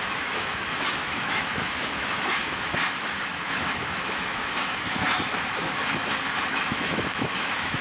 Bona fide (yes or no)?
no